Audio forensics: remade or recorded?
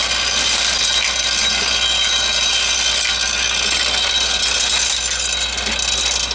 recorded